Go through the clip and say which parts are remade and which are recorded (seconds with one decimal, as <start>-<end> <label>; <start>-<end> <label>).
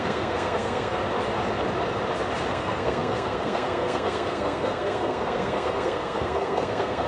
0.0-1.0 remade; 1.0-2.5 recorded; 2.5-7.1 remade